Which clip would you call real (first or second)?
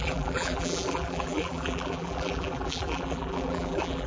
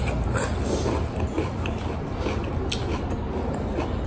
second